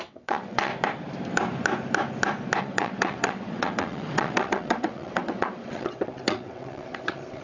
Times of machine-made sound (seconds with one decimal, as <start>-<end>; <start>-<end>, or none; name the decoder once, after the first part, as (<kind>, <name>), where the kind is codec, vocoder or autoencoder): 0.0-0.7 (vocoder, WaveNeXt); 2.6-7.4